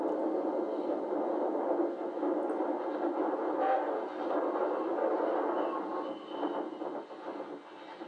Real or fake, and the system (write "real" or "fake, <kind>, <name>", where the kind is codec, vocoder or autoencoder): real